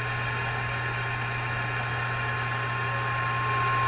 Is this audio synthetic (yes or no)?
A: no